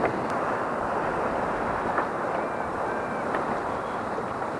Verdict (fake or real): real